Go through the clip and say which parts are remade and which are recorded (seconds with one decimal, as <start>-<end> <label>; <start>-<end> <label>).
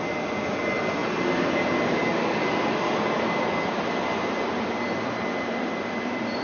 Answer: 0.0-6.4 recorded